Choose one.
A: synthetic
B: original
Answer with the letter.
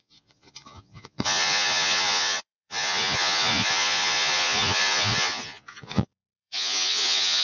A